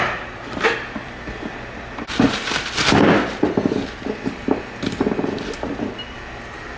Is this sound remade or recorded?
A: remade